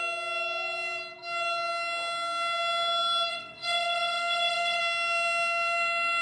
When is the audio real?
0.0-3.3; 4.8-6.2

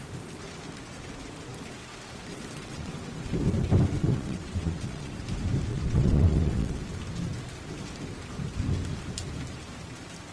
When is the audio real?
0.0-2.2; 3.0-4.0; 5.1-5.7; 6.8-10.3

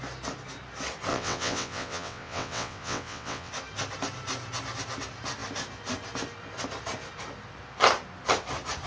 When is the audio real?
0.0-1.1; 3.5-8.9

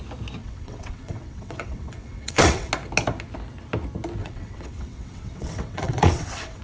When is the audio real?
0.0-0.4; 2.7-4.2